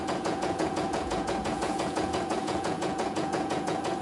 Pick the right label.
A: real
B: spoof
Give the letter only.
B